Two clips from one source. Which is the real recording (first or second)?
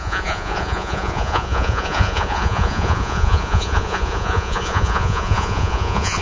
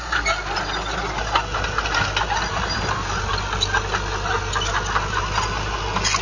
second